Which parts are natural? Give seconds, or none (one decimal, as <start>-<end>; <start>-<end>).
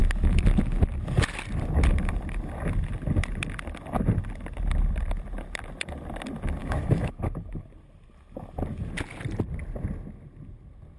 0.0-6.6; 7.2-11.0